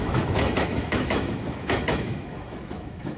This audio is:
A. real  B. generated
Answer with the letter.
B